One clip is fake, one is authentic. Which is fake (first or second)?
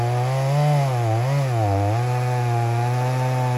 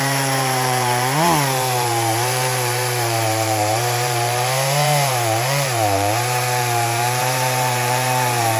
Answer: second